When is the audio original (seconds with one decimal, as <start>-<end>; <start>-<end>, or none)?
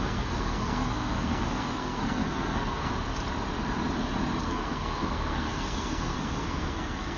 2.9-4.4